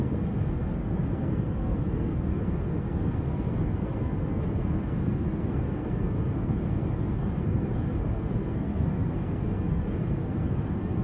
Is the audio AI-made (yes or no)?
yes